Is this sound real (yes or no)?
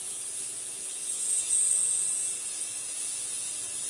no